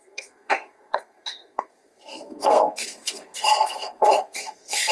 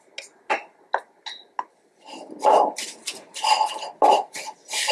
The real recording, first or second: second